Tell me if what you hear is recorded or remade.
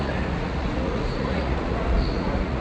remade